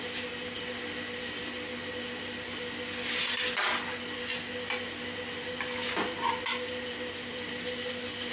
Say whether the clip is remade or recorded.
recorded